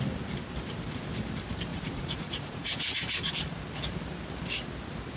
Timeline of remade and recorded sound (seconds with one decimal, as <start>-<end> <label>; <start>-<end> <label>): 0.0-1.7 recorded; 1.7-3.3 remade; 3.3-5.2 recorded